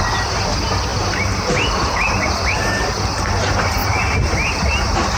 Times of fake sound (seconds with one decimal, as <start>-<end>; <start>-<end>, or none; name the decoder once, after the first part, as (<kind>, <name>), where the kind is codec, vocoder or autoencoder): none